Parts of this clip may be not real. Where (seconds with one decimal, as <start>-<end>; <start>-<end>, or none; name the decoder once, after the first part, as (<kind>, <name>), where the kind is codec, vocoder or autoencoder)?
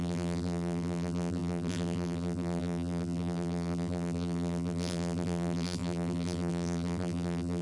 0.0-7.6 (vocoder, BigVGAN v2)